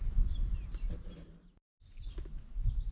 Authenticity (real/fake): real